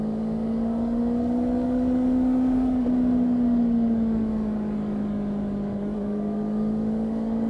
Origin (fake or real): fake